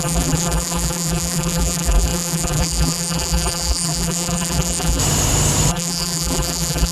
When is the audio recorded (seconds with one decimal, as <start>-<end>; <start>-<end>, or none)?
5.0-5.7